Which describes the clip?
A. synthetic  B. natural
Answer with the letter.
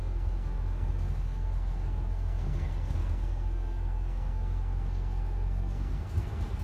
A